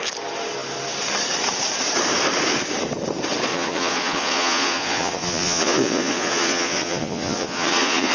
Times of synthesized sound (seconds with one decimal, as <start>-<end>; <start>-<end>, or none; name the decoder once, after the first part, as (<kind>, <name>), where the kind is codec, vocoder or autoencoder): 3.5-8.1 (vocoder, Vocos)